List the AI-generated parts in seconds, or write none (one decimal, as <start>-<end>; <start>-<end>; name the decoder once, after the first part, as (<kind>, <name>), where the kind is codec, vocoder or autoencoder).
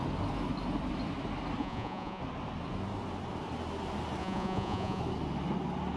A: 1.6-2.2 (vocoder, Vocos); 4.2-5.0